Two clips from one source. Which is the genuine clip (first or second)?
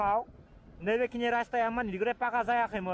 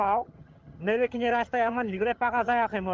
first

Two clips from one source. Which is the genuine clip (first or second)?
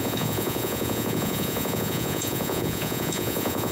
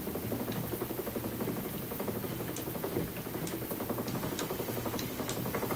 second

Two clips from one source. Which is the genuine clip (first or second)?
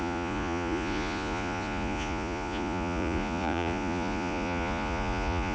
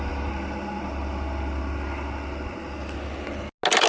second